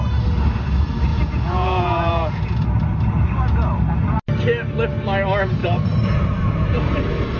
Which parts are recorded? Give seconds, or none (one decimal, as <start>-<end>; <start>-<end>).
0.0-1.1; 2.4-7.4